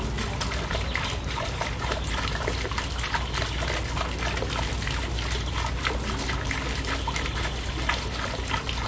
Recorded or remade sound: recorded